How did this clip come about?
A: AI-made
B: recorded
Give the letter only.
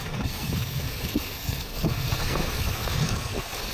A